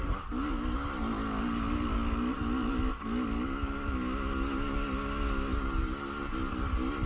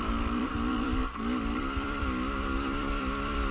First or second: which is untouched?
first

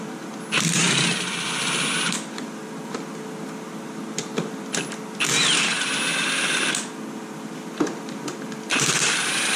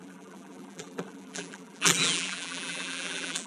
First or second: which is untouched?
first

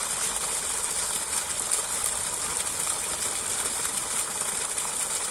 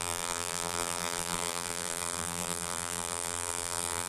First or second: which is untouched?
first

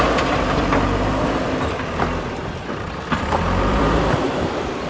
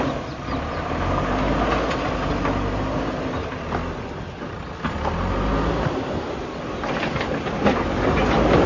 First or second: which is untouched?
second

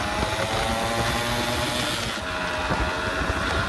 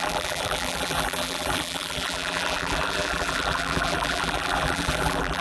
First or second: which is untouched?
first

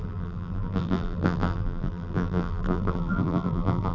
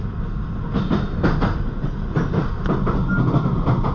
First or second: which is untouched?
second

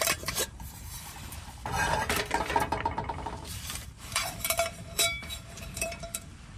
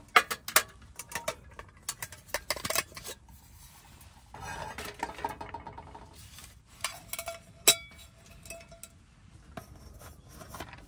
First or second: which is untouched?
second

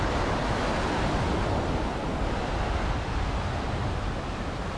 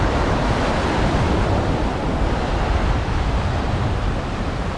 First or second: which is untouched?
first